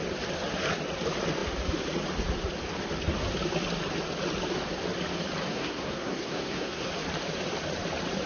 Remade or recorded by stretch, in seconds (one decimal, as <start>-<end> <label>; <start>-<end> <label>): 0.0-5.5 recorded; 5.5-6.9 remade; 6.9-8.3 recorded